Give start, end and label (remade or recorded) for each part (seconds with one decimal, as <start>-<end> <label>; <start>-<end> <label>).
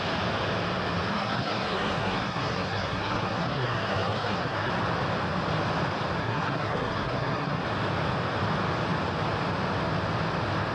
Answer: 0.0-1.1 recorded; 1.1-4.7 remade; 4.7-6.2 recorded; 6.2-7.6 remade; 7.6-10.7 recorded